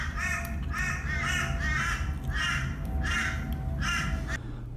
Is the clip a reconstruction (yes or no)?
no